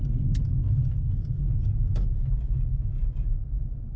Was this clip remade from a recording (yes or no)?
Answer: no